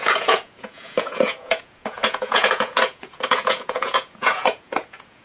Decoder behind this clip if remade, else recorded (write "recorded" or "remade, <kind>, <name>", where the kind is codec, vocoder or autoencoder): remade, vocoder, Vocos